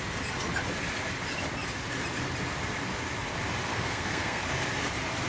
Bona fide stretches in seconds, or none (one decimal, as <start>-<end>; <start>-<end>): 0.0-3.7; 4.4-5.3